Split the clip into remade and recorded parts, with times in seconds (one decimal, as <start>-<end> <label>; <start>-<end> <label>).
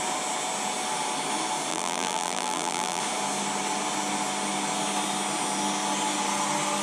0.0-1.7 recorded; 1.7-3.0 remade; 3.0-6.8 recorded